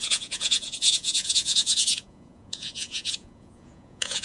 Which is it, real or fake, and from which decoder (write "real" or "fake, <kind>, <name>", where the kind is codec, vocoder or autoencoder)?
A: fake, vocoder, Vocos